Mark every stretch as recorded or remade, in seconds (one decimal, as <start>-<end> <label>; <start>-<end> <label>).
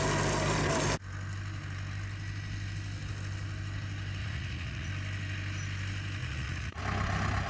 0.0-4.2 recorded; 4.2-4.9 remade; 4.9-6.2 recorded; 6.2-6.8 remade; 6.8-7.5 recorded